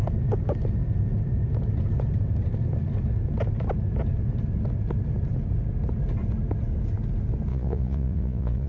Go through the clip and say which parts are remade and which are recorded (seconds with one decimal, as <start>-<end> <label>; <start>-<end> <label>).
0.0-7.5 recorded; 7.5-8.7 remade